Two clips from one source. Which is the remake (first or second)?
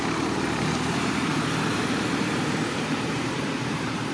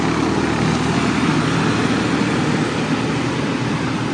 first